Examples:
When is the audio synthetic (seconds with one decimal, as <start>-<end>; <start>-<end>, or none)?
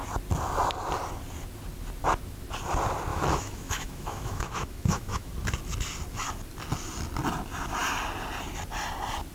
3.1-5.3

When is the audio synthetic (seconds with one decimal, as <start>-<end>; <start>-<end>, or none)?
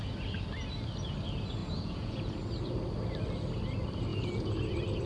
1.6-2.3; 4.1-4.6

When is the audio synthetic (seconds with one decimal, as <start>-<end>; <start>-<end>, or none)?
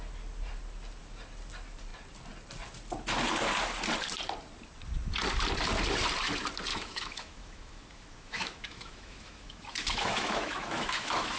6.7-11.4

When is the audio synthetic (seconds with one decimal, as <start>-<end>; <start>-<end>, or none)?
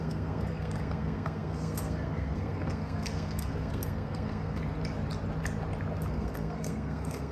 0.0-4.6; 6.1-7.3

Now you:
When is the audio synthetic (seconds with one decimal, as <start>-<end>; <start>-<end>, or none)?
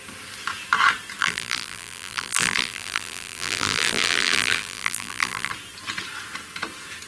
1.2-5.5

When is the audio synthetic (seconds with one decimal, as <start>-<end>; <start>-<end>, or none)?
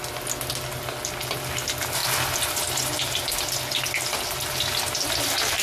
none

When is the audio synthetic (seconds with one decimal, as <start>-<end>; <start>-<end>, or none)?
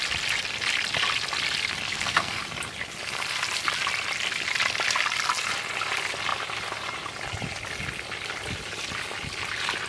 1.9-2.4